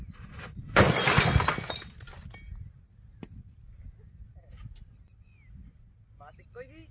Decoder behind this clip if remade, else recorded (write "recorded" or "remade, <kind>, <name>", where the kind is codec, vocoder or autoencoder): recorded